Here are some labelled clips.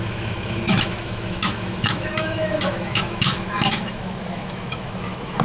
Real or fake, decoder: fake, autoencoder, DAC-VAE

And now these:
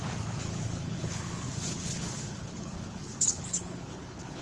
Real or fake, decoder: fake, codec, HILCodec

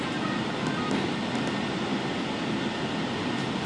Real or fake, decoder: real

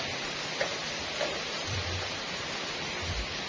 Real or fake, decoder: real